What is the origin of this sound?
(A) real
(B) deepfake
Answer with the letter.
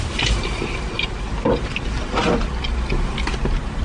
A